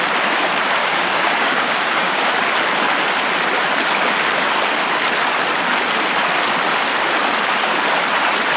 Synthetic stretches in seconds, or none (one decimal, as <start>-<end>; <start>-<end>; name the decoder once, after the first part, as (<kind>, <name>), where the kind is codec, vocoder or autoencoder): 0.8-2.3 (codec, DAC)

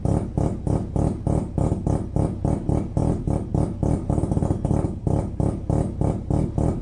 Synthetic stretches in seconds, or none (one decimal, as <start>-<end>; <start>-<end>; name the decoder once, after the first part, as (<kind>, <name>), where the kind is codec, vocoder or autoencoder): none

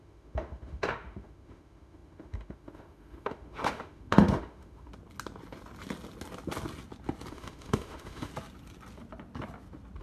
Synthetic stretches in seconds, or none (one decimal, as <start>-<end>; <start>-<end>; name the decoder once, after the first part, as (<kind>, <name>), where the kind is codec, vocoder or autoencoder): 0.0-4.9 (autoencoder, DAC-VAE); 7.3-8.3

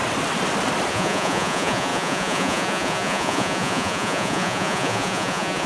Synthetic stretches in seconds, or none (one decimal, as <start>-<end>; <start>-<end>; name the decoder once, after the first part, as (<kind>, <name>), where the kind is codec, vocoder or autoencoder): 0.9-5.7 (vocoder, Vocos)

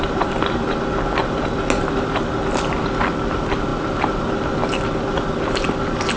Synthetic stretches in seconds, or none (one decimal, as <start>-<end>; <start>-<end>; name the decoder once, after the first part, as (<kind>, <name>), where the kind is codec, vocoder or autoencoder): none

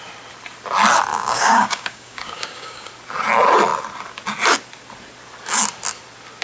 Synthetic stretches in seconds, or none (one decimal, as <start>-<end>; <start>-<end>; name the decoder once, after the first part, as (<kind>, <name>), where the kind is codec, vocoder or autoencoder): 1.1-2.9 (codec, DAC)